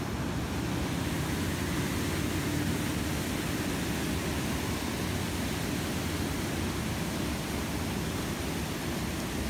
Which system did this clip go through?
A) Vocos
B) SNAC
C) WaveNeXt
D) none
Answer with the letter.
D